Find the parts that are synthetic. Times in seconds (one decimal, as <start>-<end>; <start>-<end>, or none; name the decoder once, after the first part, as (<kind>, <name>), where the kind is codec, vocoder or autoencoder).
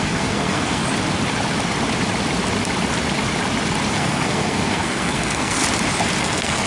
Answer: 0.0-0.8 (codec, SNAC); 3.9-5.6; 6.2-6.7